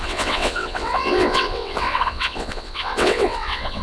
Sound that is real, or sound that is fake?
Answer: fake